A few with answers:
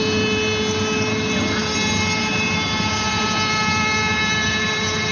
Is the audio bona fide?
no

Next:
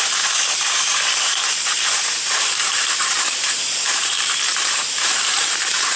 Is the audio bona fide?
no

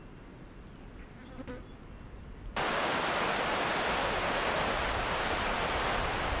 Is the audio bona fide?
yes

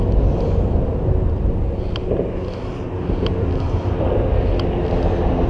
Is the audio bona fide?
yes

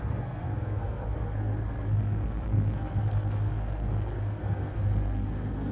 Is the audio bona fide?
no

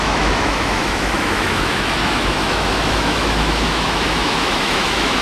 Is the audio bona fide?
no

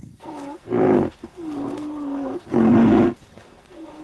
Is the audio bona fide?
no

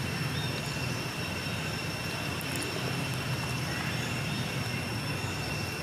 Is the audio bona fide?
yes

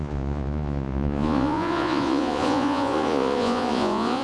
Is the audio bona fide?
no